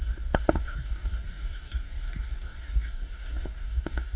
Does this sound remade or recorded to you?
remade